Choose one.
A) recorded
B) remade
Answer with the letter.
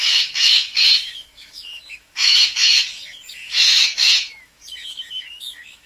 B